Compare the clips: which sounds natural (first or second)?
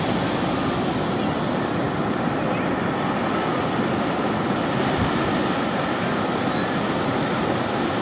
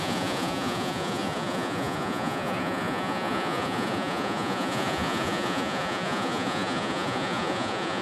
first